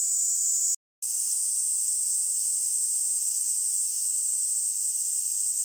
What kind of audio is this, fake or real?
real